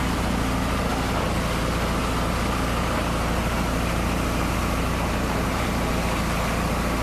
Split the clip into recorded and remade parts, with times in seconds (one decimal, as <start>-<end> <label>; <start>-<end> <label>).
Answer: 0.0-3.4 recorded; 3.4-5.9 remade; 5.9-7.0 recorded

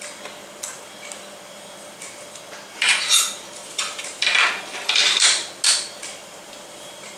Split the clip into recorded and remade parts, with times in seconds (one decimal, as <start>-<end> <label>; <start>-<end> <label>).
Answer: 0.0-7.2 recorded

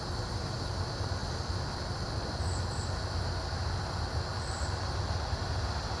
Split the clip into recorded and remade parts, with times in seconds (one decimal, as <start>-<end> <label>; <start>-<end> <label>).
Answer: 0.0-6.0 recorded

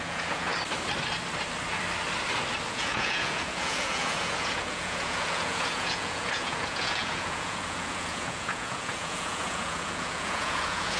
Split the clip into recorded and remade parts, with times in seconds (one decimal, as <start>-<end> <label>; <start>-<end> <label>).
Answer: 0.0-0.5 remade; 0.5-2.7 recorded; 2.7-11.0 remade

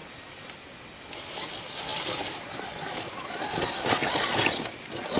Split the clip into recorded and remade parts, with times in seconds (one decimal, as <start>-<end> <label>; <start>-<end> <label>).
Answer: 0.0-5.2 recorded